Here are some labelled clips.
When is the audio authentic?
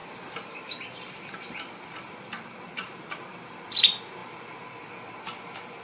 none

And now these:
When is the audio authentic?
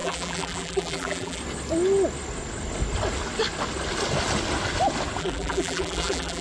1.4-5.2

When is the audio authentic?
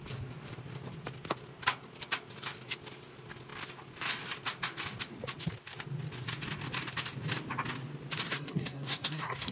0.0-8.3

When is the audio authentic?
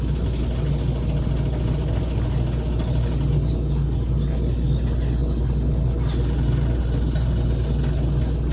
0.0-8.5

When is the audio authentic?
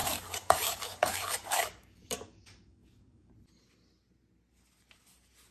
3.3-5.5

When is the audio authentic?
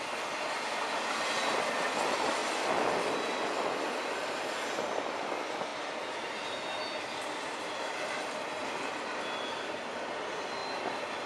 0.0-11.3